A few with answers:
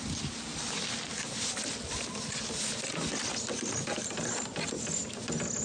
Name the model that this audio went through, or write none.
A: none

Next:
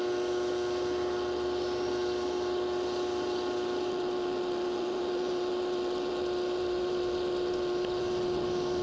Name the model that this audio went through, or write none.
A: none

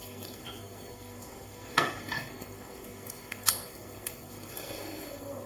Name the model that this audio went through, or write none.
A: codec, SNAC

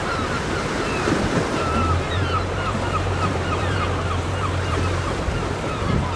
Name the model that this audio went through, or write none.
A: vocoder, BigVGAN v2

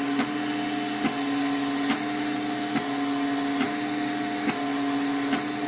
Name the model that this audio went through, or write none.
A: none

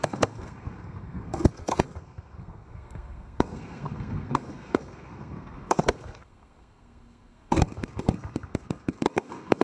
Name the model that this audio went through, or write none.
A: codec, SNAC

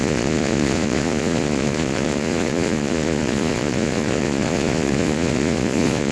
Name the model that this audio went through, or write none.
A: vocoder, Vocos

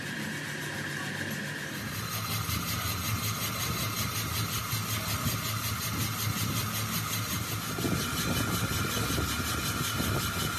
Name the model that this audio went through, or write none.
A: none